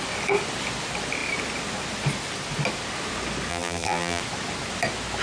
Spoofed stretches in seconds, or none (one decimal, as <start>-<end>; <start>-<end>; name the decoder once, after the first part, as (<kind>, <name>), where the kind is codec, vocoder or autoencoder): 3.5-4.2 (vocoder, BigVGAN v2)